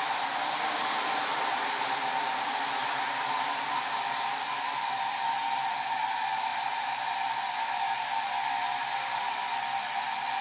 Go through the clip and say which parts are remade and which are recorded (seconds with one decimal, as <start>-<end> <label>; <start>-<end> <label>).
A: 0.0-10.4 recorded